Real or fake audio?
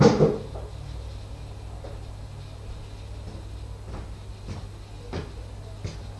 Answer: real